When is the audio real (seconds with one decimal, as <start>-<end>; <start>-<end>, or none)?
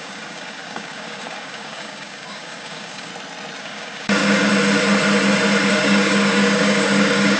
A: 3.1-3.6; 4.5-5.7